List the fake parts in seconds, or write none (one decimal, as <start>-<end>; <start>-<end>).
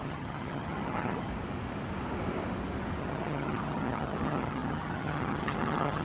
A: 0.0-1.3; 3.0-6.0